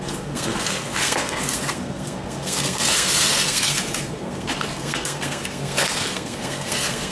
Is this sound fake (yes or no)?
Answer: yes